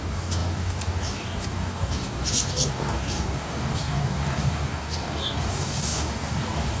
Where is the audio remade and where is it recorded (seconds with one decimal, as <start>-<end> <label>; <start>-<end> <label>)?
0.0-6.8 remade